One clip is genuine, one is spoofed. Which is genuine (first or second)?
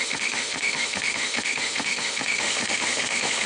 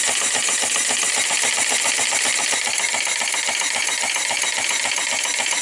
second